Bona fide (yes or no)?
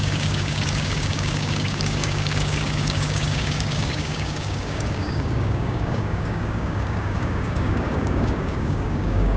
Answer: no